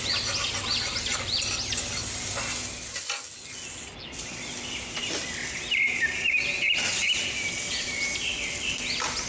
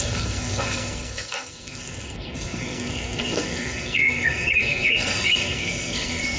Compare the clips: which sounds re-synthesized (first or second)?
second